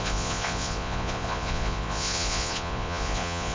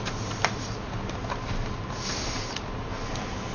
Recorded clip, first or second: second